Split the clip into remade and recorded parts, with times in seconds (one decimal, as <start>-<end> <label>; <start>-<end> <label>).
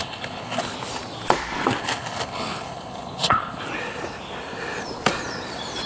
0.0-0.6 remade; 0.6-1.8 recorded; 1.8-3.6 remade; 3.6-5.9 recorded